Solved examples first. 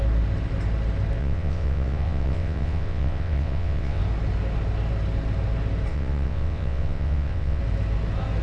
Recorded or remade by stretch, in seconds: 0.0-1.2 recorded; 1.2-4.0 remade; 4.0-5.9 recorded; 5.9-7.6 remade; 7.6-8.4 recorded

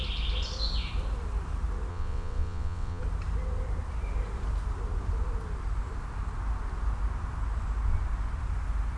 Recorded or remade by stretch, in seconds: 0.0-1.9 recorded; 1.9-3.0 remade; 3.0-9.0 recorded

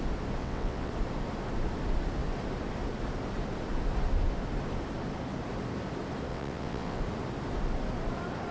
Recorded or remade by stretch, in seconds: 0.0-0.4 recorded; 0.4-0.9 remade; 0.9-6.3 recorded; 6.3-7.0 remade; 7.0-8.5 recorded

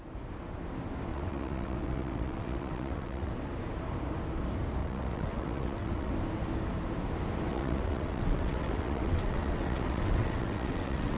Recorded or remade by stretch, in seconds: 0.0-1.1 recorded; 1.1-3.3 remade; 3.3-4.8 recorded; 4.8-6.1 remade; 6.1-7.5 recorded; 7.5-11.2 remade